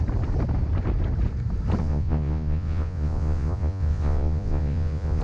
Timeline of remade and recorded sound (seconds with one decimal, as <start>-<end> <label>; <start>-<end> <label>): 0.0-1.8 recorded; 1.8-5.2 remade

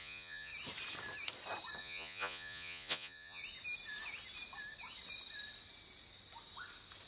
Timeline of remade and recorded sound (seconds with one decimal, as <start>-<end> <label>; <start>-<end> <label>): 0.0-0.5 remade; 0.5-1.8 recorded; 1.8-3.4 remade; 3.4-7.1 recorded

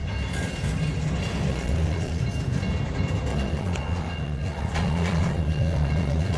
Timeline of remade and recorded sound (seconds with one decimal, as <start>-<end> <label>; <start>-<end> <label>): 0.0-1.5 recorded; 1.5-2.2 remade; 2.2-3.3 recorded; 3.3-6.4 remade

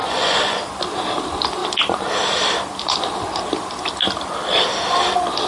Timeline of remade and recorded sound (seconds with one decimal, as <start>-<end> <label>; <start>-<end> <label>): 0.0-0.6 remade; 0.6-5.5 recorded

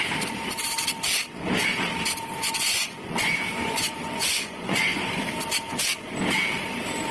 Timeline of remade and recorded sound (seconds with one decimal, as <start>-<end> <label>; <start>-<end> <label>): 0.0-2.4 recorded; 2.4-5.2 remade; 5.2-7.1 recorded